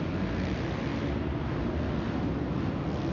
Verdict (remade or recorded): recorded